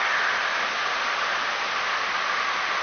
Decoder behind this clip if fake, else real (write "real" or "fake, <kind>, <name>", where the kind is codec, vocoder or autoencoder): real